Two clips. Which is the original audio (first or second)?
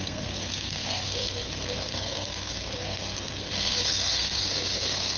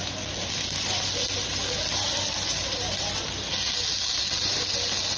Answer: second